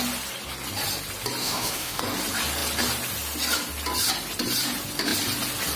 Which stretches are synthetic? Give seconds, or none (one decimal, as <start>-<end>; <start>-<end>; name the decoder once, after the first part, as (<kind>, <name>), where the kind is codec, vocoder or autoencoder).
1.4-2.0 (autoencoder, DAC-VAE)